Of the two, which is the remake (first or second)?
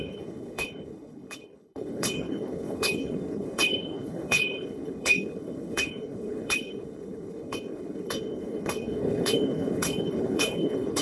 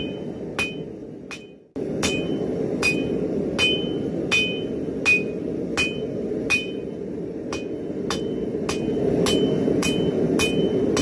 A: first